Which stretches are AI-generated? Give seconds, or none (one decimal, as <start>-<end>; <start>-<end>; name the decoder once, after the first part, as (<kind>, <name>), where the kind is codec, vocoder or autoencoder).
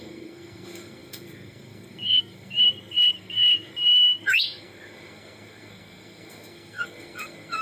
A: 0.0-7.6 (codec, SNAC)